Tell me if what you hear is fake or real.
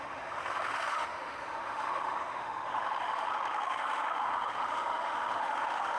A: fake